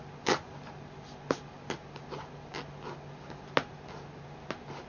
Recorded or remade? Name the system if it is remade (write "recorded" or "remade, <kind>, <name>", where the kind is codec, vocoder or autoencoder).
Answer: recorded